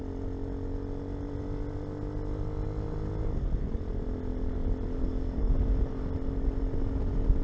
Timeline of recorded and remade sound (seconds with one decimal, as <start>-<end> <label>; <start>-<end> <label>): 0.0-4.9 recorded; 4.9-5.5 remade; 5.5-7.4 recorded